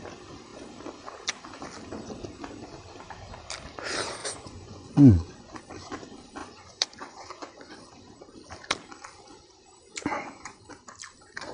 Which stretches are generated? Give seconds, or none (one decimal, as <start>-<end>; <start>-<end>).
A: 4.2-5.6; 6.4-7.9; 10.0-10.6